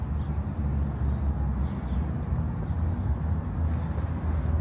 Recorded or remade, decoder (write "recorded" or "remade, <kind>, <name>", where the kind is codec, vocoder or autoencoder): recorded